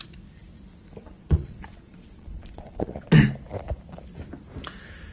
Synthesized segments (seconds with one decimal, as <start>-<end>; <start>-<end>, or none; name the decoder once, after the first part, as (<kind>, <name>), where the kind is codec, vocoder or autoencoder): 1.0-3.1 (vocoder, Vocos)